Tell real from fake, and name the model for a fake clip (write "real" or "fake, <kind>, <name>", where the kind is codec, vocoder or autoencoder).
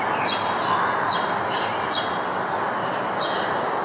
real